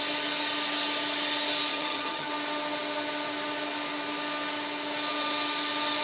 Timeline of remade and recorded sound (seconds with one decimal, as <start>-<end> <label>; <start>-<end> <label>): 0.0-1.7 recorded; 1.7-2.3 remade; 2.3-6.0 recorded

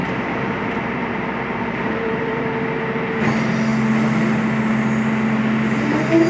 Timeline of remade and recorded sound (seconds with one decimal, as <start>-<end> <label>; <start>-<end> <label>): 0.0-2.5 remade; 2.5-6.3 recorded

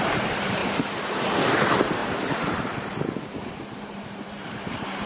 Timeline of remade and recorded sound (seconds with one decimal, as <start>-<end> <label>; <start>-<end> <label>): 0.0-0.6 remade; 0.6-1.5 recorded; 1.5-2.0 remade; 2.0-3.7 recorded; 3.7-5.1 remade

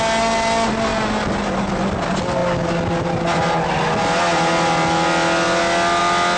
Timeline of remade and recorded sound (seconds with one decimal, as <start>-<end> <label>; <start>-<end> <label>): 0.0-6.4 recorded

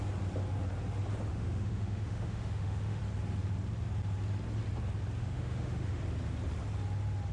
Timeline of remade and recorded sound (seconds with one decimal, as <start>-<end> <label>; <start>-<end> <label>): 0.0-1.3 recorded; 1.3-3.0 remade; 3.0-5.2 recorded; 5.2-6.0 remade; 6.0-7.3 recorded

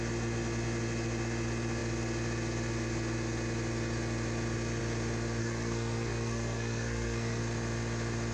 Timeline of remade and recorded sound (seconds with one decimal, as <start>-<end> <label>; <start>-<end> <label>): 0.0-5.4 recorded; 5.4-7.4 remade; 7.4-8.3 recorded